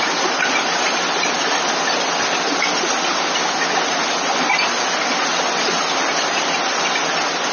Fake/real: real